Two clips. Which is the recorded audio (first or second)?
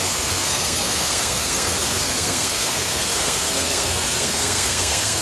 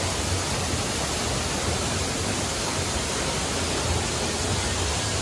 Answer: second